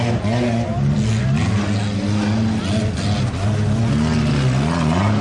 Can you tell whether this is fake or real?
real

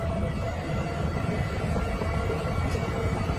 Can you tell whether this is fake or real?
real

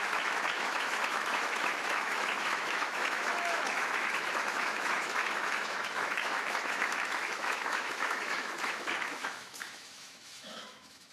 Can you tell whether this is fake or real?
fake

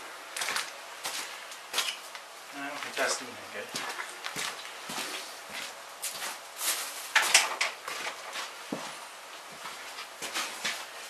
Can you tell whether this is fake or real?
real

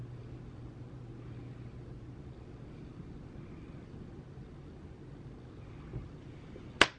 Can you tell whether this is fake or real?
real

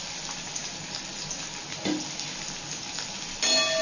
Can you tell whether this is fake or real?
real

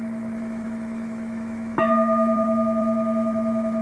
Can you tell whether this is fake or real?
fake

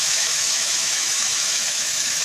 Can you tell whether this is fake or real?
fake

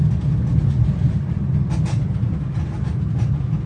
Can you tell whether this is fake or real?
real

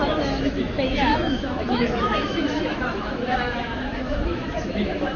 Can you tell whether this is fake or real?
fake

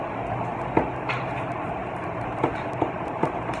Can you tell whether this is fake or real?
real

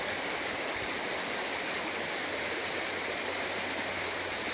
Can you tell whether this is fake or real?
real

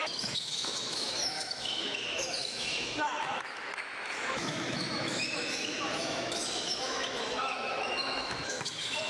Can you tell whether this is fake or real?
fake